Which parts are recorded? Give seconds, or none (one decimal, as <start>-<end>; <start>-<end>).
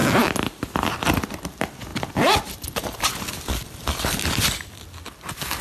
1.3-1.9; 4.8-5.6